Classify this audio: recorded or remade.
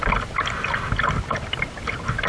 recorded